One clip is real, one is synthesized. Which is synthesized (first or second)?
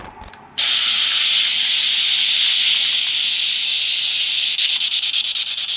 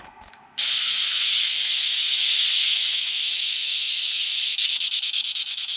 second